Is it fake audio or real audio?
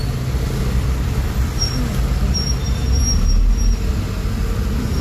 real